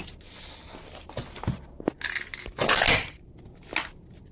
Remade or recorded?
recorded